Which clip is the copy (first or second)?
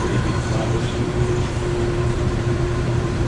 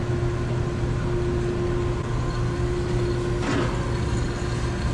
first